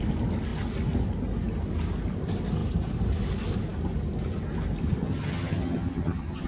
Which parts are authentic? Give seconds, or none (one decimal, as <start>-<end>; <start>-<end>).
0.0-5.0